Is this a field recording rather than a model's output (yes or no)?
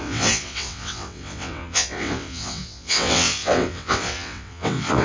no